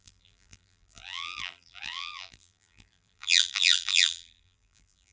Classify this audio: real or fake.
fake